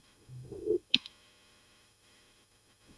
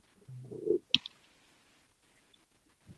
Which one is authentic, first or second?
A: second